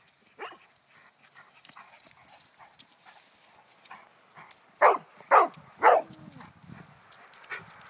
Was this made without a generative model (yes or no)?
yes